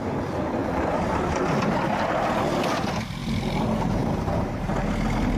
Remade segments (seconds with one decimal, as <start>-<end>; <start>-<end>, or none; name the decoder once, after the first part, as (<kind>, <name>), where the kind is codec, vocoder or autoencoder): 0.6-1.1 (vocoder, BigVGAN v2); 3.2-4.7